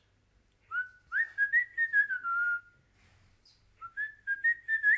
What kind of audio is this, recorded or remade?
recorded